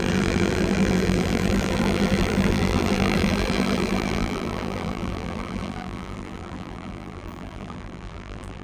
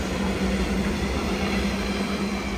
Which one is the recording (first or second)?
second